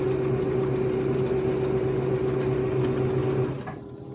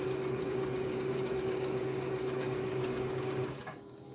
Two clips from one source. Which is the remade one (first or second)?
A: second